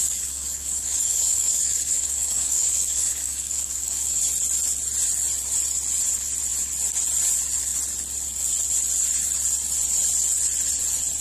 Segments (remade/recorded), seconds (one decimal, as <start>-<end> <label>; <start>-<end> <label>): 0.0-4.2 remade; 4.2-11.2 recorded